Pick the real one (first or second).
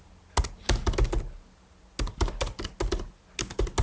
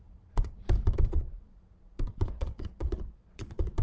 first